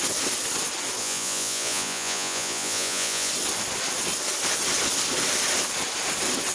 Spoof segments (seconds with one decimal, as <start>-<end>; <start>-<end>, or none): 1.0-3.3